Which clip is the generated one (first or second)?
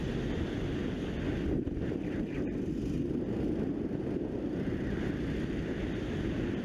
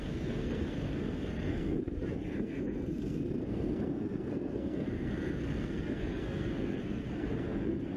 second